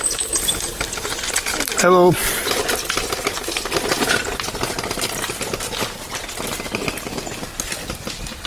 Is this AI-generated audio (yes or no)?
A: no